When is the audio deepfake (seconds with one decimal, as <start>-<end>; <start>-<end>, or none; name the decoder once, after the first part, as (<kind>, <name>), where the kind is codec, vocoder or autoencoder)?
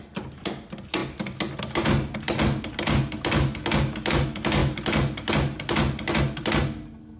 none